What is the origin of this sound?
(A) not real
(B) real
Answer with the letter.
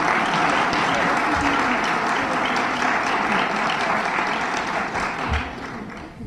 B